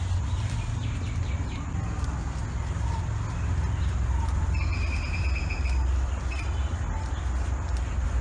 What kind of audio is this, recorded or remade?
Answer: recorded